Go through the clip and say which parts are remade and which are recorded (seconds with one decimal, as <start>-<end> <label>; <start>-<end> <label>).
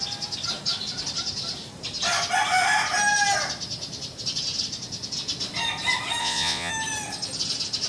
0.0-6.2 recorded; 6.2-6.7 remade; 6.7-7.9 recorded